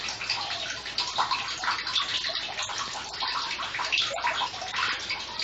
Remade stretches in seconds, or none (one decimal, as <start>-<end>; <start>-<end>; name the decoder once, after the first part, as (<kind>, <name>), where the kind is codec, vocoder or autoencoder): 2.1-5.0 (vocoder, BigVGAN v2)